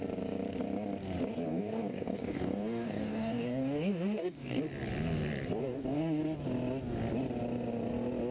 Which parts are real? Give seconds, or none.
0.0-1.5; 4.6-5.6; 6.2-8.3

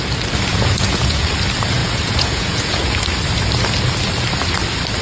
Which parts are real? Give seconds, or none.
0.0-0.5; 1.3-1.8; 3.0-5.0

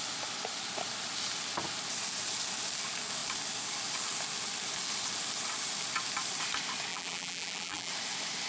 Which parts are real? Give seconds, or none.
0.0-6.9; 7.9-8.5

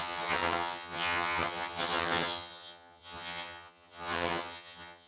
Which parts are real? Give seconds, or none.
none

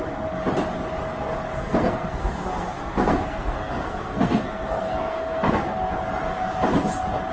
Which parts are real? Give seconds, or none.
0.0-1.5; 5.9-7.3